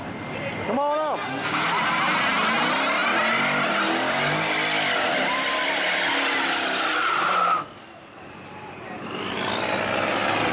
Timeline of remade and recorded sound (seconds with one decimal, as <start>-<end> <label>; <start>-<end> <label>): 0.0-10.5 recorded